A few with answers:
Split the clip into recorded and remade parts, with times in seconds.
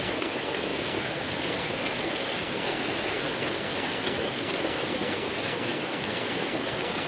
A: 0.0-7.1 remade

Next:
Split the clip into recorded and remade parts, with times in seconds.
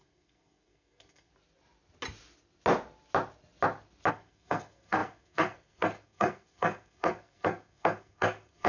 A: 0.0-1.3 remade; 1.3-4.1 recorded; 4.1-8.7 remade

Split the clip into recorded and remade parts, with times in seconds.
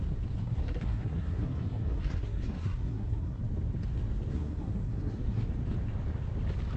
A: 0.0-0.4 recorded; 0.4-3.4 remade; 3.4-4.3 recorded; 4.3-5.5 remade; 5.5-6.8 recorded